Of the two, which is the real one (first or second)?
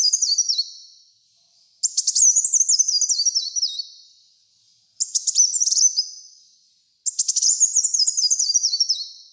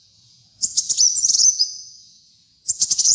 first